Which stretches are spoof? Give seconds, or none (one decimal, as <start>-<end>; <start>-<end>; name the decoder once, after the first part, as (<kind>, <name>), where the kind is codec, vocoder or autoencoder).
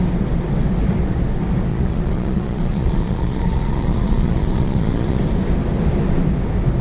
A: 1.7-5.2 (vocoder, Vocos)